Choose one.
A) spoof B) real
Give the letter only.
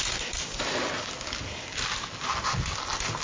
B